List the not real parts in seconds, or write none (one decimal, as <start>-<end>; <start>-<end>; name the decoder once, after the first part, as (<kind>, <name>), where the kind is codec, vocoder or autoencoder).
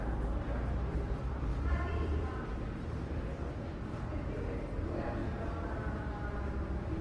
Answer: 1.5-2.2 (vocoder, BigVGAN v2)